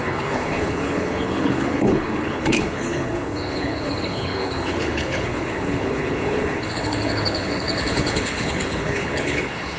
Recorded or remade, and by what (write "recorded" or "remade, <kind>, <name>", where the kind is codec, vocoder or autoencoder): remade, codec, HILCodec